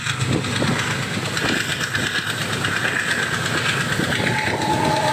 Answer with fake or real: real